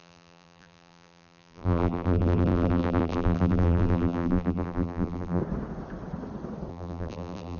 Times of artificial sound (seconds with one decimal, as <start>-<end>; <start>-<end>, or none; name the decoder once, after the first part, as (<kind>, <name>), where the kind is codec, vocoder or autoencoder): 0.0-5.4 (vocoder, BigVGAN v2); 6.7-7.6